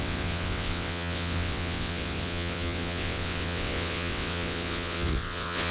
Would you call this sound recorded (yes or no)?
no